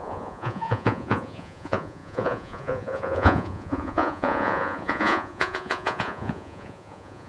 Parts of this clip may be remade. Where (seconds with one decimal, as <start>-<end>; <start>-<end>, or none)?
0.0-7.3

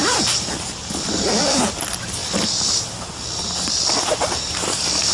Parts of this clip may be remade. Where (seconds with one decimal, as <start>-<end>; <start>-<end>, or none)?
none

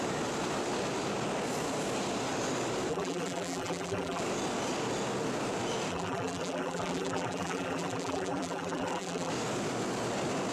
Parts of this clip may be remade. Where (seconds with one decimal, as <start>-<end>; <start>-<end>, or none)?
2.9-4.2; 5.9-9.3

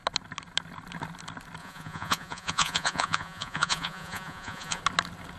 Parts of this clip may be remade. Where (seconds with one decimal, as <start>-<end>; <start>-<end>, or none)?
1.6-4.8

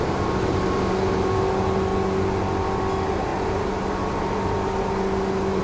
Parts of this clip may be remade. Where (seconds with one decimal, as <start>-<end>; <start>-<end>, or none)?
none

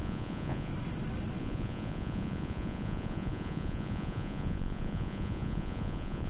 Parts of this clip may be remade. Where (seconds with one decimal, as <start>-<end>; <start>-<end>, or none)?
0.0-0.7; 1.4-6.3